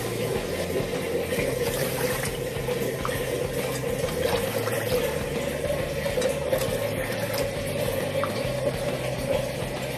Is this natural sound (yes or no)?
yes